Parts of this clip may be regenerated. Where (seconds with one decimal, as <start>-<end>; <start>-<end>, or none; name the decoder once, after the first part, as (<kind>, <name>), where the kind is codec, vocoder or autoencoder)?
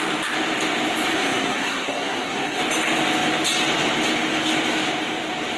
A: 1.1-2.6 (codec, SNAC)